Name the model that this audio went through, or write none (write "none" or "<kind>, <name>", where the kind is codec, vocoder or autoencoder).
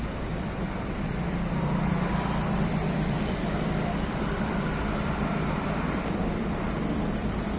vocoder, BigVGAN v2